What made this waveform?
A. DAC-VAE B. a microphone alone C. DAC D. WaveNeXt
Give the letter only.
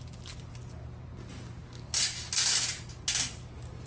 B